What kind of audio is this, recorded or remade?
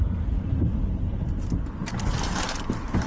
remade